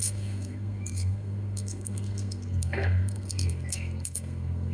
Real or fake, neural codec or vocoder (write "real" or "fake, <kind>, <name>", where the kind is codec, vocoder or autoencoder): fake, codec, SNAC